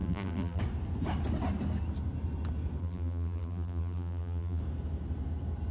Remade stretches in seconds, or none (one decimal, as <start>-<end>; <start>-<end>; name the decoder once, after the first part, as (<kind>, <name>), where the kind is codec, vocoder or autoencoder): 0.0-0.6 (vocoder, BigVGAN v2); 2.8-4.6